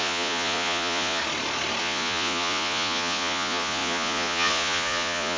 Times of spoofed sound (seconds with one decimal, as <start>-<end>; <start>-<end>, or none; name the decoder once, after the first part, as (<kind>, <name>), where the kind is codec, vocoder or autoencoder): 0.0-1.2 (vocoder, Vocos); 1.8-5.4